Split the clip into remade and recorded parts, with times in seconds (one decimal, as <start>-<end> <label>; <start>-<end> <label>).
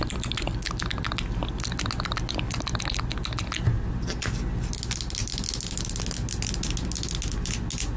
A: 0.0-8.0 recorded